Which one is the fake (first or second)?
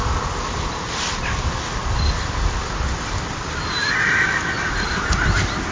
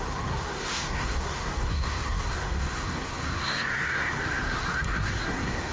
second